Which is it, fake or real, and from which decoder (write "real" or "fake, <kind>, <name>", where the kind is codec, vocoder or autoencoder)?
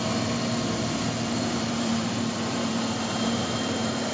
fake, vocoder, BigVGAN v2